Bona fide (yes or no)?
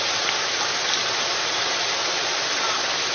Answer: yes